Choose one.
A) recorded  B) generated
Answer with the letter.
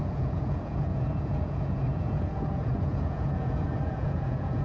B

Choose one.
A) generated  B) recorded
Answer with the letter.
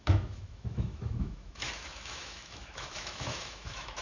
A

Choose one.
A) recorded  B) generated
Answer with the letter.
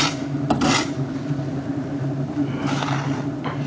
A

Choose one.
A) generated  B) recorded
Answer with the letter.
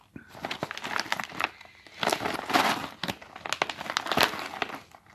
B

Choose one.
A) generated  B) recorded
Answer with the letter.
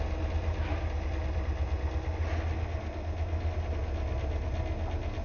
B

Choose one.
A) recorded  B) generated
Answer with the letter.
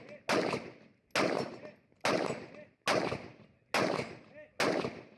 A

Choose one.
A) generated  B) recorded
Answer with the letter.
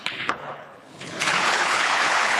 A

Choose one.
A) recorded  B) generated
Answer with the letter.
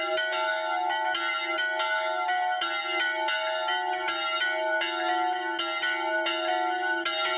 A